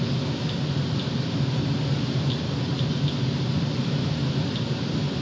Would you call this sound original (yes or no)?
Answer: yes